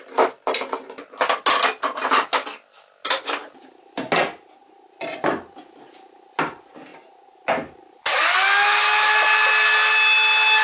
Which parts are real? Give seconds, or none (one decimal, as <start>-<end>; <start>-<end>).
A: 0.0-10.6

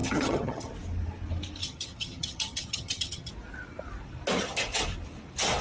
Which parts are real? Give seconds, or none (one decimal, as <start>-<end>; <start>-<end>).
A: 0.7-1.6; 3.3-5.6

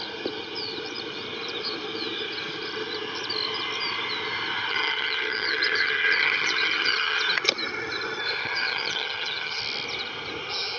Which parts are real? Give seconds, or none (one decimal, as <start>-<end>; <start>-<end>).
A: 0.0-4.7; 7.2-8.4; 9.6-10.8

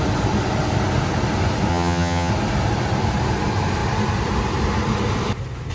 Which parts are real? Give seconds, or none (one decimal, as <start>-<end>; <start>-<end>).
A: 0.0-1.7; 2.3-5.7

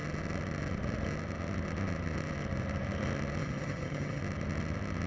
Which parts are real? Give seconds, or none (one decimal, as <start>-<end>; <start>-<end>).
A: 0.0-3.4; 4.2-5.1

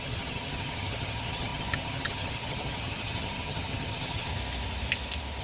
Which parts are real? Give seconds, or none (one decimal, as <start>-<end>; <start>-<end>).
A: 4.3-5.4

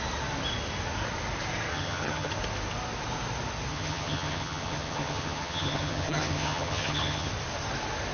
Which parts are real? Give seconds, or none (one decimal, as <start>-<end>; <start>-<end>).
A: 0.0-1.7; 2.3-3.7; 7.3-8.1

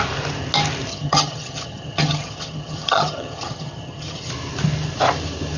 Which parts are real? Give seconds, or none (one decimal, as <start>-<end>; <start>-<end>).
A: 0.0-0.9; 4.3-5.6